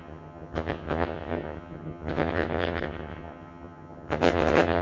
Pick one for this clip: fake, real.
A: fake